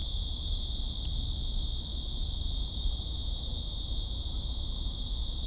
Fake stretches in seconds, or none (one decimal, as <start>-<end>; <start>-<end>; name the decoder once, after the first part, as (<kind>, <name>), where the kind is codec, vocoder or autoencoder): 0.0-0.8 (vocoder, BigVGAN v2); 1.9-5.5